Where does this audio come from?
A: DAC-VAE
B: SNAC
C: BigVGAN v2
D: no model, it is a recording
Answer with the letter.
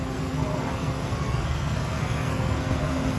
B